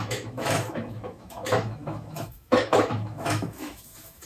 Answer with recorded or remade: remade